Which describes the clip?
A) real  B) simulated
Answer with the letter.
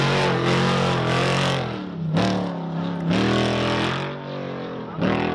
A